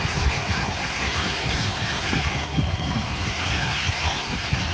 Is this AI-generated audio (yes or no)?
yes